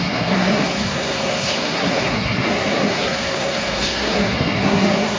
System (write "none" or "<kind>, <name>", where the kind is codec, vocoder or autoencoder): codec, SNAC